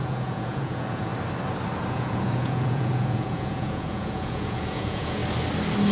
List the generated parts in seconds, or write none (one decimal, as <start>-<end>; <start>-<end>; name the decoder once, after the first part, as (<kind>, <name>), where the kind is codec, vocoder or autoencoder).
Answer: 0.0-1.1 (vocoder, Vocos); 1.9-5.2